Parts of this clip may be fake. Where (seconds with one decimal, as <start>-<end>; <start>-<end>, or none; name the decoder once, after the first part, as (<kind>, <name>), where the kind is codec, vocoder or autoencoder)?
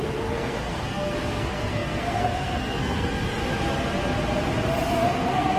0.0-3.4 (codec, SNAC); 4.9-5.6